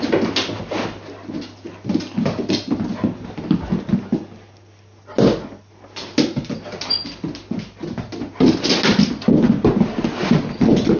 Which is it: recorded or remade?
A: recorded